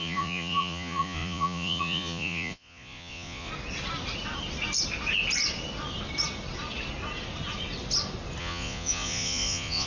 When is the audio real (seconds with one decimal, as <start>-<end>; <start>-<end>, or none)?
3.5-8.4